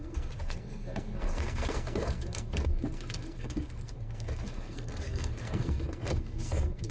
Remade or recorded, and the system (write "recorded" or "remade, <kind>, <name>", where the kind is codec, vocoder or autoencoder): remade, codec, SNAC